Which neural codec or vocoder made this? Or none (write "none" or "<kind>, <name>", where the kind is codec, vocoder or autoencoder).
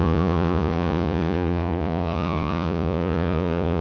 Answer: vocoder, Vocos